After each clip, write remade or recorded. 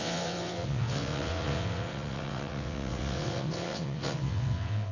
remade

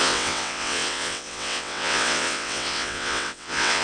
remade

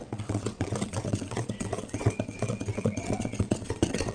remade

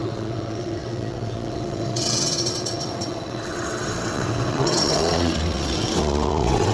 remade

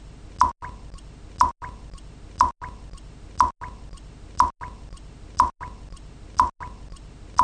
recorded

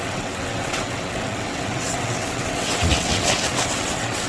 remade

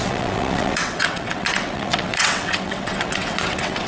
remade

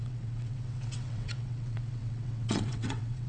remade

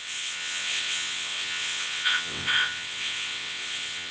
remade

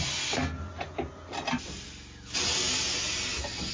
recorded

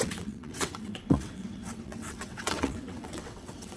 remade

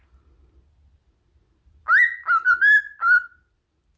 recorded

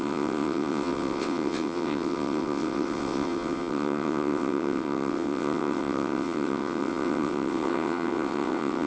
remade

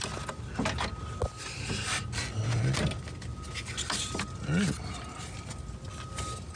recorded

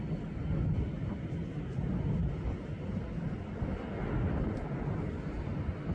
recorded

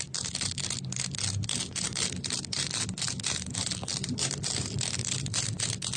recorded